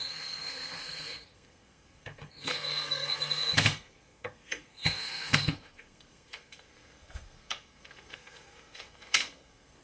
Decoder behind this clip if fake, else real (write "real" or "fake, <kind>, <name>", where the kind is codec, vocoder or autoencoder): fake, codec, SNAC